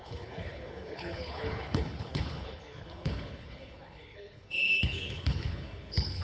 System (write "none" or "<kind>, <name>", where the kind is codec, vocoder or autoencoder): codec, HILCodec